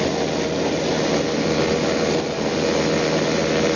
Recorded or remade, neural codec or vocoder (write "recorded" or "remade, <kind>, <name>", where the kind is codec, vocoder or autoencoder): recorded